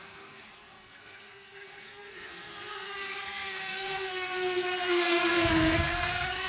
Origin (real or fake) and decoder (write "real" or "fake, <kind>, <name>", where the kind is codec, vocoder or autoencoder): fake, codec, SNAC